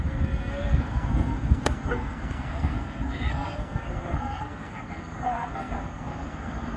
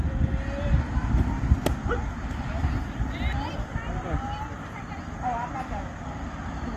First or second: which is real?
second